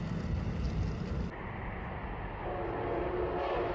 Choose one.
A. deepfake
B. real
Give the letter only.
B